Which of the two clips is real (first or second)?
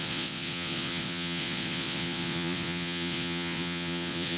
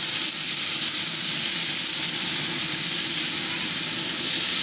second